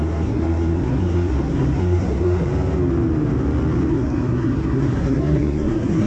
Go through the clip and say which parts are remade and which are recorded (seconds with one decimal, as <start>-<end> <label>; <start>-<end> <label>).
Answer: 0.0-2.5 remade; 2.5-3.9 recorded; 3.9-6.1 remade